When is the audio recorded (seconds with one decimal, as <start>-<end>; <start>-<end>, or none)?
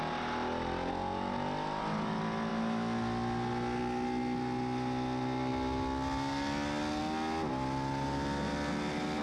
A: 0.0-9.2